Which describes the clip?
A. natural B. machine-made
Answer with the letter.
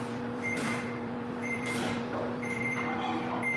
B